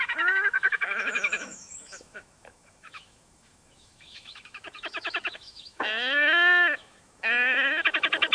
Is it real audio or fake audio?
fake